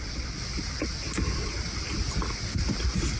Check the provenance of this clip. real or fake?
real